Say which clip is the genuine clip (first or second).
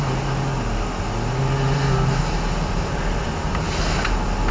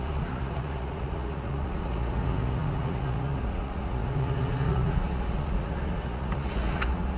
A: first